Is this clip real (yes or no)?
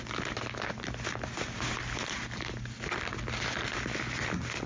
yes